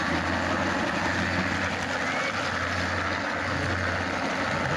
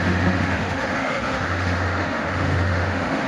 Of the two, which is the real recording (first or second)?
first